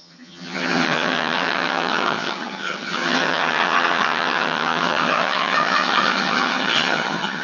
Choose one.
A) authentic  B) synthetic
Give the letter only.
B